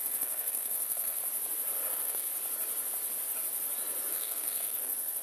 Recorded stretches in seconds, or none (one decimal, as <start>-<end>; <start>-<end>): 1.2-1.9; 2.3-4.1

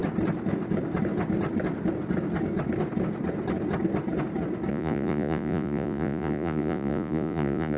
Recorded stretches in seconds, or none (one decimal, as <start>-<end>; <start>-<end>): 0.0-4.7

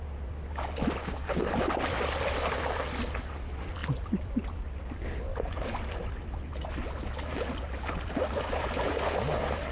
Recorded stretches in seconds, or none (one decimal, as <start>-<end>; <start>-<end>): 0.0-1.0; 1.5-9.7

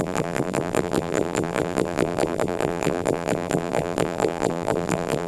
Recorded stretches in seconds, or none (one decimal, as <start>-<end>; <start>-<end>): none

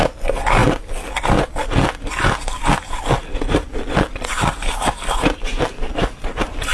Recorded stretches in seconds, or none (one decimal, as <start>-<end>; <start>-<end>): 0.0-6.7

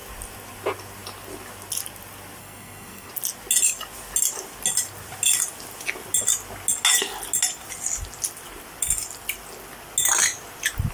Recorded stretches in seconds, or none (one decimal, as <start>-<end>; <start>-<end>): 0.0-2.4; 3.1-10.9

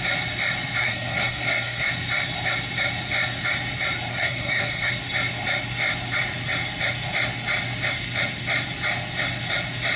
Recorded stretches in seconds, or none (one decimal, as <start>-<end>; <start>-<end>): 0.0-0.8; 1.9-4.1; 4.9-10.0